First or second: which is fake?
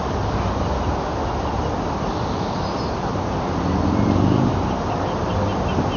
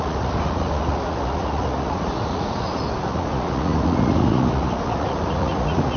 second